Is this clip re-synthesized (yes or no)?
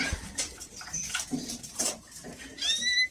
no